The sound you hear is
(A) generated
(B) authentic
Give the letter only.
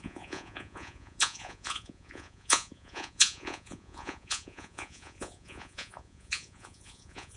A